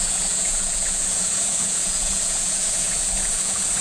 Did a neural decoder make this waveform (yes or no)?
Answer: yes